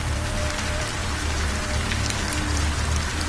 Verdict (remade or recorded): remade